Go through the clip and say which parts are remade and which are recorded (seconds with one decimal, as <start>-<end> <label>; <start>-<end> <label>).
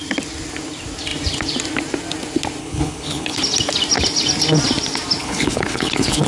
0.0-2.6 recorded; 2.6-3.4 remade; 3.4-5.2 recorded; 5.2-6.3 remade